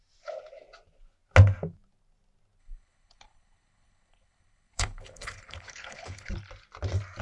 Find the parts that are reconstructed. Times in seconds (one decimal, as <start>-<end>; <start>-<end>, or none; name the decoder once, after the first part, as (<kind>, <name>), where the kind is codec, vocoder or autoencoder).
2.6-6.3 (codec, HILCodec)